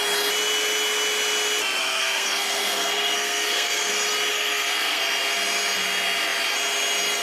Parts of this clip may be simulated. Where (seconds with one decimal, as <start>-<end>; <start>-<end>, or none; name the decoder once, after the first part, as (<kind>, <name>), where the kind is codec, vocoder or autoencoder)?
1.8-3.9 (codec, SNAC); 4.3-5.0